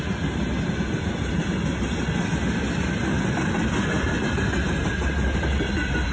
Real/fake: real